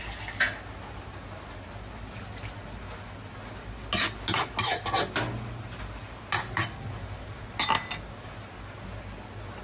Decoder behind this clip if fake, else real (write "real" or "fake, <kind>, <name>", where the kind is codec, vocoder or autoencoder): real